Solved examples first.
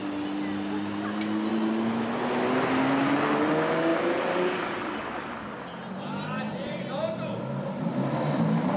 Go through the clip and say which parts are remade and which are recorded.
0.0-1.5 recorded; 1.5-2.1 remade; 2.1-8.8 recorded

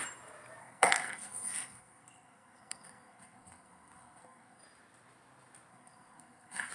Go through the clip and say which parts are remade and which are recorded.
0.0-0.6 recorded; 0.6-4.6 remade; 4.6-5.7 recorded; 5.7-6.7 remade